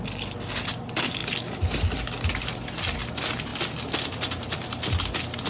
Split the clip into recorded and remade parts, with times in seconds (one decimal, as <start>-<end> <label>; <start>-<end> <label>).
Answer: 0.0-5.5 recorded